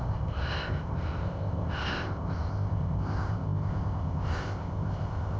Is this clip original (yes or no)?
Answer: no